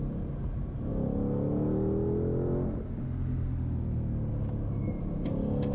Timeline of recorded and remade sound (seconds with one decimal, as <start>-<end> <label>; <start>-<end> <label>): 0.0-5.7 recorded